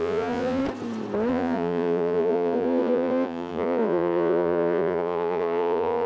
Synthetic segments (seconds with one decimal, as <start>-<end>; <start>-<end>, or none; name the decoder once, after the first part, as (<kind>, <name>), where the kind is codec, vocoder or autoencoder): 0.0-0.6 (vocoder, Vocos); 1.3-6.1